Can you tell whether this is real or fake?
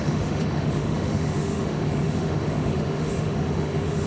fake